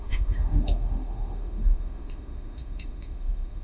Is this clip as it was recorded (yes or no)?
no